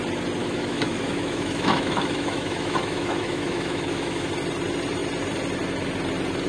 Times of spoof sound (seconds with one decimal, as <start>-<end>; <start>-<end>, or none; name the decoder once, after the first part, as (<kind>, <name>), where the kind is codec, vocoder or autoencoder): 0.4-4.3 (autoencoder, DAC-VAE)